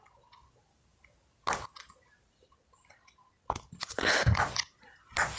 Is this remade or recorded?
recorded